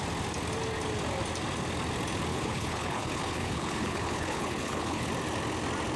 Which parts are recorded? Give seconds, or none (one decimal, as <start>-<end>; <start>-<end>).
0.0-2.3; 5.1-6.0